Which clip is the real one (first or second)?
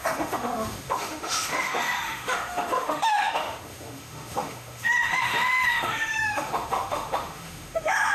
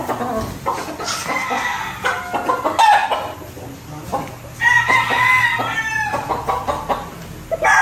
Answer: second